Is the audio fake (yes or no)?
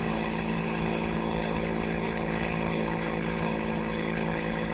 yes